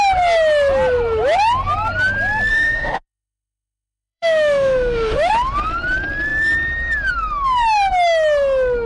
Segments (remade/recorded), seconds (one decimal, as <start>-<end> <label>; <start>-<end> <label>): 0.0-2.5 recorded; 2.5-5.3 remade; 5.3-8.9 recorded